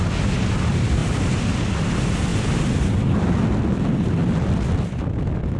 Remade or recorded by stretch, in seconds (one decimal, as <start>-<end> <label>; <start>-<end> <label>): 0.0-1.0 recorded; 1.0-1.5 remade; 1.5-4.2 recorded; 4.2-4.9 remade; 4.9-5.6 recorded